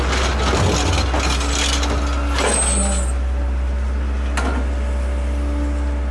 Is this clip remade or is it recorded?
recorded